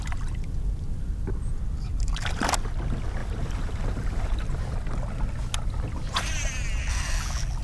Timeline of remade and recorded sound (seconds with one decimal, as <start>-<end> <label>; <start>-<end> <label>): 0.0-3.2 recorded; 3.2-4.6 remade; 4.6-7.6 recorded